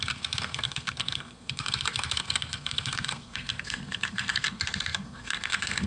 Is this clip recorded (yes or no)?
no